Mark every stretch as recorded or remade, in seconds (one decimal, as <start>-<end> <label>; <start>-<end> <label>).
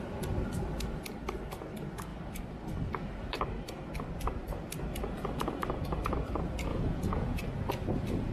0.0-6.7 recorded; 6.7-7.4 remade; 7.4-8.3 recorded